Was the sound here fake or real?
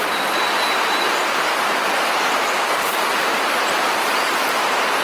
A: fake